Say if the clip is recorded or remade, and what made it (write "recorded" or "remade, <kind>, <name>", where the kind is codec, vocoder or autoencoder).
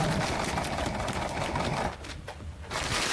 recorded